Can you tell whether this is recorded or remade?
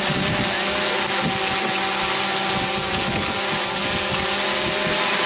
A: recorded